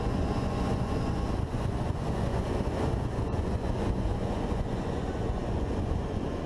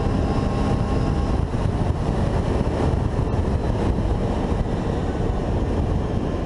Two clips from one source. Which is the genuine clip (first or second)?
second